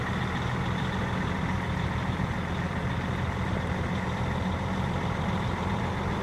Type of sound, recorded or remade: recorded